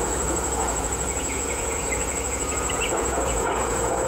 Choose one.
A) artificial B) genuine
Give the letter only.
A